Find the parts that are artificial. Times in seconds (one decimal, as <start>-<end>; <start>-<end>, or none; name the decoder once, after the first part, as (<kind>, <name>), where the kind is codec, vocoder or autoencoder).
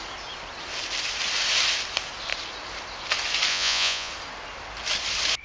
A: 3.5-4.1 (vocoder, Vocos)